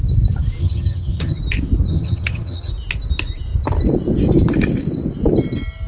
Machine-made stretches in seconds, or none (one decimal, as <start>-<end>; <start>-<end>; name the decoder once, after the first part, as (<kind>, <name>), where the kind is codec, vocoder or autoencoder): 0.6-1.4 (vocoder, HiFi-GAN); 1.9-2.7